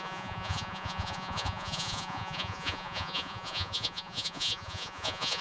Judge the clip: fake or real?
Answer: fake